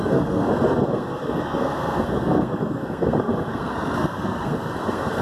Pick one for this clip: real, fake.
fake